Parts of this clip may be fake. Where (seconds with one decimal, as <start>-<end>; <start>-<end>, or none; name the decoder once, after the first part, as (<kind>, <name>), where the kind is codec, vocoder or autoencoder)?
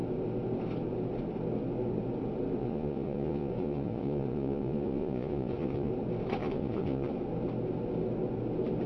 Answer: 2.6-5.9 (vocoder, Vocos); 6.4-7.1